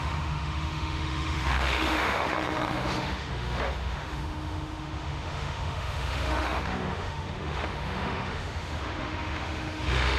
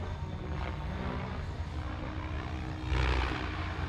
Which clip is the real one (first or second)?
second